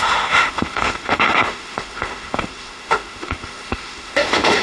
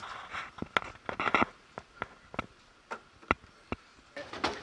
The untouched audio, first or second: second